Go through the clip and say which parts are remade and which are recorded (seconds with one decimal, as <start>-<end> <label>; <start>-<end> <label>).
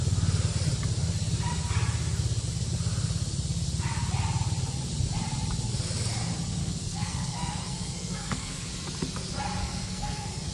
0.0-6.6 recorded; 6.6-8.7 remade; 8.7-9.6 recorded; 9.6-10.5 remade